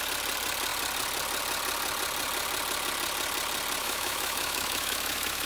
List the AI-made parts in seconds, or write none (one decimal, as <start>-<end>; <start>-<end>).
3.8-5.5